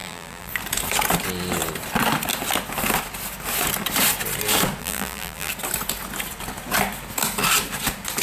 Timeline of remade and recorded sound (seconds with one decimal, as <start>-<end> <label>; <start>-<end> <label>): 0.0-0.5 remade; 0.5-4.8 recorded; 4.8-5.5 remade; 5.5-8.2 recorded